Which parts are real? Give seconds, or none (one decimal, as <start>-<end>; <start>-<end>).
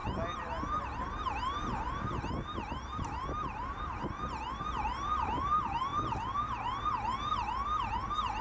0.0-8.4